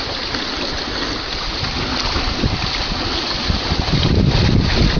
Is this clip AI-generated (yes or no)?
no